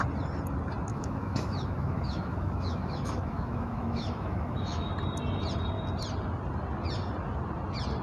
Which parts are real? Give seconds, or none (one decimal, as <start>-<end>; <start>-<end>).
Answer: 0.0-0.9; 4.9-8.0